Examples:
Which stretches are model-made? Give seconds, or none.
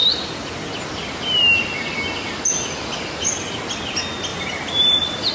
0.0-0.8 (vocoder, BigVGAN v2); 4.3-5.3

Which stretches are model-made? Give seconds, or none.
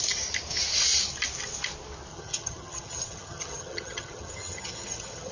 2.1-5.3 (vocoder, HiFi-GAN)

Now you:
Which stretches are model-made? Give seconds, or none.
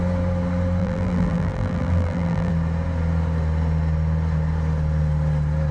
0.8-2.5 (vocoder, BigVGAN v2)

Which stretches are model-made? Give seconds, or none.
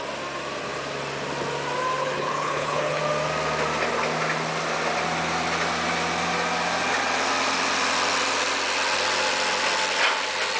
2.0-3.0 (codec, HILCodec)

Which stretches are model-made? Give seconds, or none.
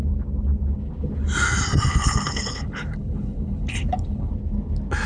1.9-4.3 (codec, HILCodec)